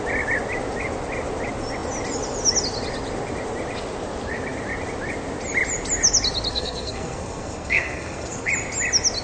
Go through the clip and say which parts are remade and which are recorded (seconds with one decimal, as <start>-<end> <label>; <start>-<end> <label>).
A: 0.0-6.5 recorded; 6.5-8.5 remade; 8.5-9.2 recorded